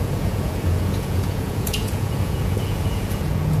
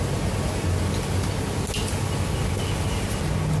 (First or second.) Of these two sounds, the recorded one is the second